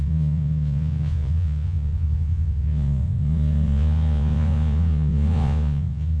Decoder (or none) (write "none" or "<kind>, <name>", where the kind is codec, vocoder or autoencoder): vocoder, Vocos